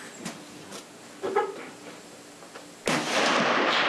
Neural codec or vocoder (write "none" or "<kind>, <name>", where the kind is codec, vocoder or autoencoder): none